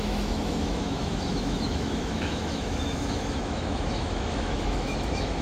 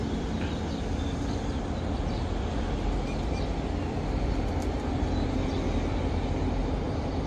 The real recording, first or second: second